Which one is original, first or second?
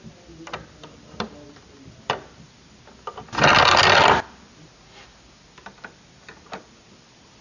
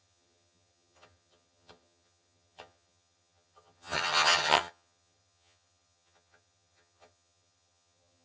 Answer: first